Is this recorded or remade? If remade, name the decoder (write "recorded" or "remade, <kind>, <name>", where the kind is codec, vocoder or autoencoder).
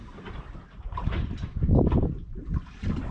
recorded